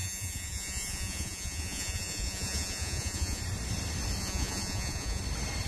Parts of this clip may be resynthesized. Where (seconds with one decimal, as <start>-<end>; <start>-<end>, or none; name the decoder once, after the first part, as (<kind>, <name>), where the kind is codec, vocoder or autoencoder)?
0.0-3.4 (vocoder, Vocos); 4.2-5.2